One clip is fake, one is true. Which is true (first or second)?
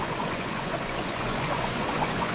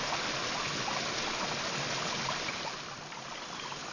second